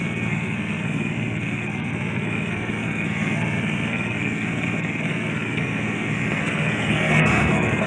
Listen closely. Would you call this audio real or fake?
fake